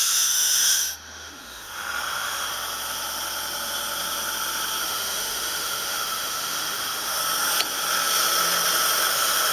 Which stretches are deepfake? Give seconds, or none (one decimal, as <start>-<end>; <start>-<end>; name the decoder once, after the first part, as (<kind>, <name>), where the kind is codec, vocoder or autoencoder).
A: 0.0-2.5 (autoencoder, DAC-VAE); 4.8-7.2; 9.1-9.5